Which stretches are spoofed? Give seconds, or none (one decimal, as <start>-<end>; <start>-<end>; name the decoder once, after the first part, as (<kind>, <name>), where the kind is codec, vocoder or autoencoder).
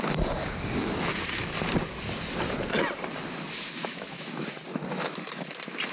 3.8-4.4 (autoencoder, DAC-VAE)